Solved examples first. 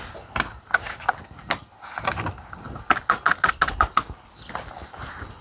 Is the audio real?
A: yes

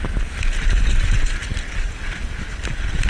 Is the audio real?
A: yes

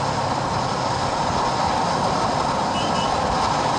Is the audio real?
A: yes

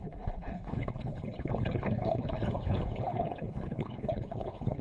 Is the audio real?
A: no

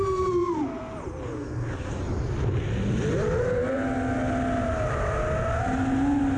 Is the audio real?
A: yes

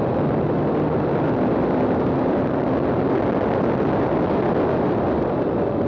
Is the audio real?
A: yes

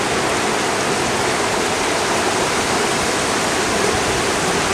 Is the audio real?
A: yes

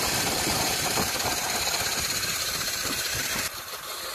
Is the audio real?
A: no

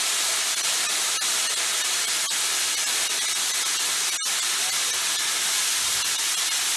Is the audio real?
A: yes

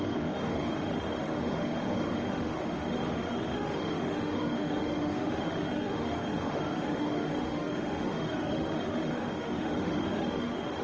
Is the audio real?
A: no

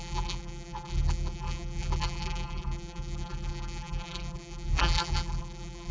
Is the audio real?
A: no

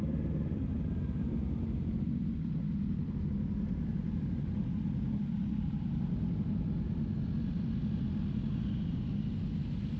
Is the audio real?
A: yes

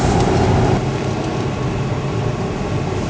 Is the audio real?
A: yes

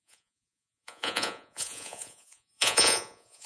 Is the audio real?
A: no